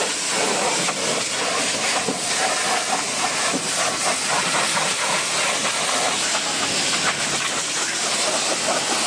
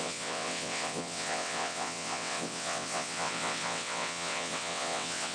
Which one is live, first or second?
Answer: first